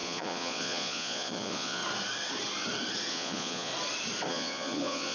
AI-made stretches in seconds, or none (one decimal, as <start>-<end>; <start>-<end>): 0.0-1.8; 3.1-3.7; 4.3-5.1